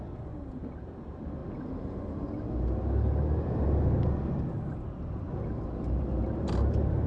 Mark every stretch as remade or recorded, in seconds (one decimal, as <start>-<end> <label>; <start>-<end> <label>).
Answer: 0.0-1.4 remade; 1.4-4.7 recorded; 4.7-7.1 remade